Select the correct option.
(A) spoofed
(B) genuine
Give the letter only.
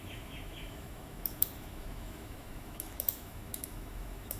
A